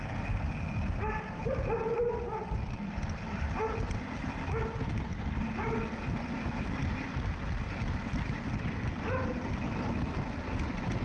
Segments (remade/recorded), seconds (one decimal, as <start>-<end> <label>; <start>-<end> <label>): 0.0-11.0 recorded